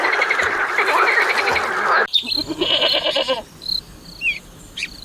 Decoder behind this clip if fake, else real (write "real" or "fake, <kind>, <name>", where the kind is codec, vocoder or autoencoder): fake, vocoder, BigVGAN v2